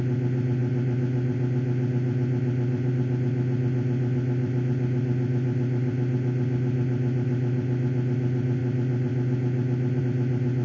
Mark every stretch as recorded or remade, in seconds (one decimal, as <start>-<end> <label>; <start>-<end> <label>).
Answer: 0.0-10.6 recorded